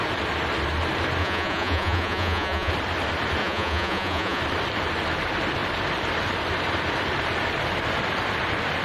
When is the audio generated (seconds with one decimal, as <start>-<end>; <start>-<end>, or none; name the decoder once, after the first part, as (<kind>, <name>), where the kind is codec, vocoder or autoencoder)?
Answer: 1.2-2.7 (vocoder, Vocos); 3.4-4.4